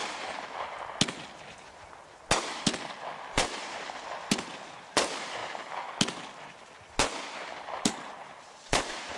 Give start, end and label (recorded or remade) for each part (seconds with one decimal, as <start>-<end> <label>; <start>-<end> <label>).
0.0-4.7 recorded; 4.7-5.4 remade; 5.4-7.9 recorded; 7.9-9.2 remade